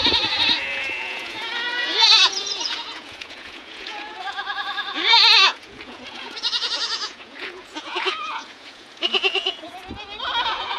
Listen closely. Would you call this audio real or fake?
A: fake